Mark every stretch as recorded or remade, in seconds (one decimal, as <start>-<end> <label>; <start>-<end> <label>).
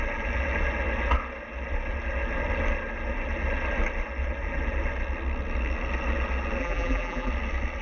0.0-6.6 recorded; 6.6-7.3 remade; 7.3-7.8 recorded